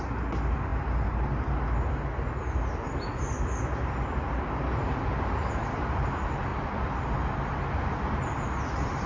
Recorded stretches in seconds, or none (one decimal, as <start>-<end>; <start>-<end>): 0.0-9.1